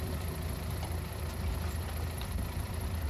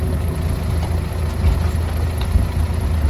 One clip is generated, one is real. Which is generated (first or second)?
first